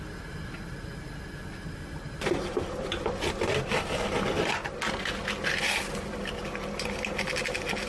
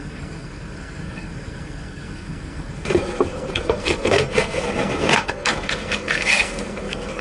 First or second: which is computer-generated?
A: second